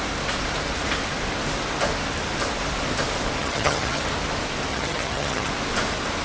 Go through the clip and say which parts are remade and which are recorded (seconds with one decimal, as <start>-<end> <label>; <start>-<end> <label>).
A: 0.0-3.4 recorded; 3.4-4.0 remade; 4.0-4.7 recorded; 4.7-5.5 remade; 5.5-6.2 recorded